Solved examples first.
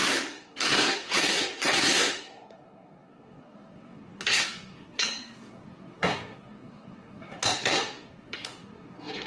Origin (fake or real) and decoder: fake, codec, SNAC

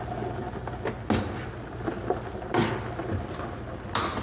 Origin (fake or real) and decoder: real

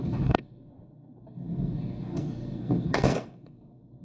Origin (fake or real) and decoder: fake, codec, SNAC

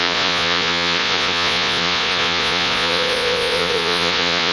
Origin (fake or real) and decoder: fake, vocoder, Vocos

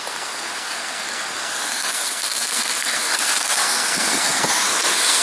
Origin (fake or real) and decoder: fake, codec, SNAC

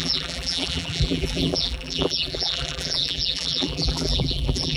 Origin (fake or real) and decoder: fake, vocoder, BigVGAN v2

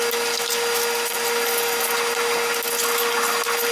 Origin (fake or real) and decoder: real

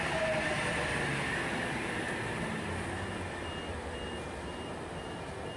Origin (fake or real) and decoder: real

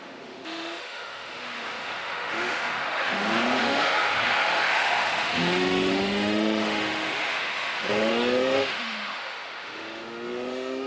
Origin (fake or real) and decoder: fake, autoencoder, DAC-VAE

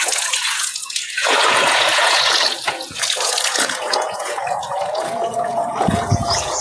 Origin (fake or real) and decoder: fake, vocoder, Vocos